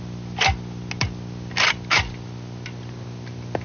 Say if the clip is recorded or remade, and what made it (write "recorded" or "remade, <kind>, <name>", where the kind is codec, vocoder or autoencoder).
recorded